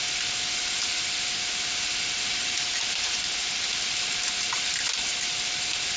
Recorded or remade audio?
recorded